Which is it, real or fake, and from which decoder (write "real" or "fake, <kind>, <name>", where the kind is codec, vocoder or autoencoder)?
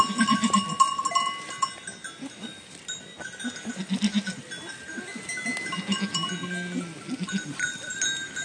real